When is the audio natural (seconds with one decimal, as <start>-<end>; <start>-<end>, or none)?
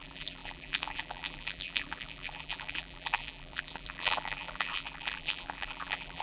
none